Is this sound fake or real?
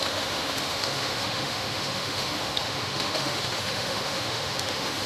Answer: fake